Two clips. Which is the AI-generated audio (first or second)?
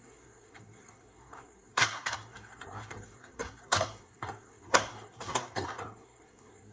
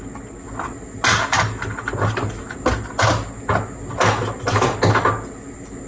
first